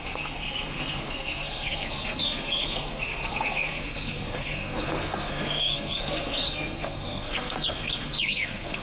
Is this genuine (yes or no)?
no